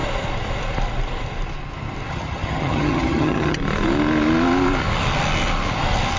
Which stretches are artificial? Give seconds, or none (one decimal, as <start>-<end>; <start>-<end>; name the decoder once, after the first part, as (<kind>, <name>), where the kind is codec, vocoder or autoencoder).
2.1-3.6 (vocoder, HiFi-GAN)